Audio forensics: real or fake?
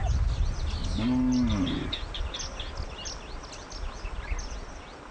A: real